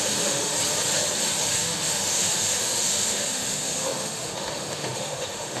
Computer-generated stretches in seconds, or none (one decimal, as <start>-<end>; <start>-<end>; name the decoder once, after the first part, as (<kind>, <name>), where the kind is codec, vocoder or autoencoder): 0.0-0.5 (autoencoder, DAC-VAE); 1.4-5.6